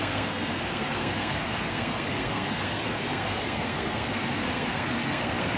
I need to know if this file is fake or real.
fake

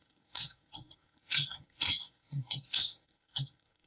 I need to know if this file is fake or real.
fake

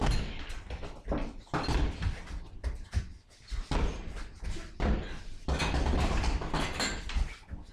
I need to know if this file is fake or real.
real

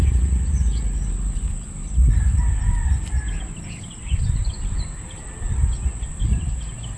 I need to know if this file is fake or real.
real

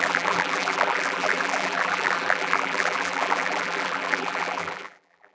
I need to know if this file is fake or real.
fake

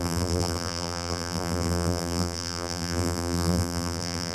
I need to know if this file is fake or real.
fake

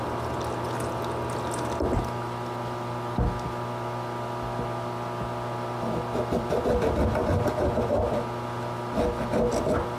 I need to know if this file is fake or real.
real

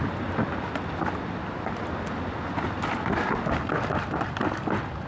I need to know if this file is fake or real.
real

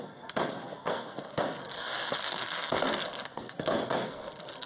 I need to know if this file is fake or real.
fake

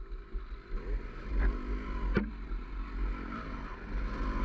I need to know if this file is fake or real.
real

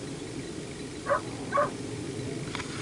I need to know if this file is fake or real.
real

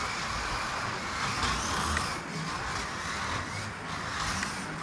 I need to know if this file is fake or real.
real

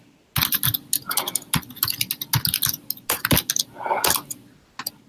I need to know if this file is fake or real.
real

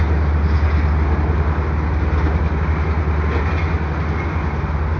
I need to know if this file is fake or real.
real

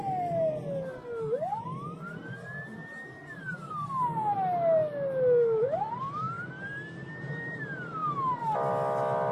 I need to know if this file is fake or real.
real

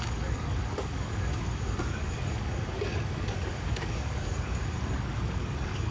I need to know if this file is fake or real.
fake